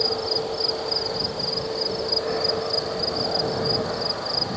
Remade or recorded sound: recorded